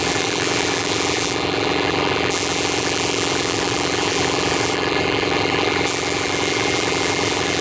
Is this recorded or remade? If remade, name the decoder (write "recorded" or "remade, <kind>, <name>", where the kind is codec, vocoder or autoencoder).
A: remade, vocoder, BigVGAN v2